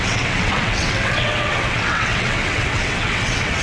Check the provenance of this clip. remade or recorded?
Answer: remade